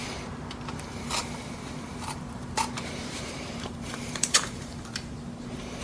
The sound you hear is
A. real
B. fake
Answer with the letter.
B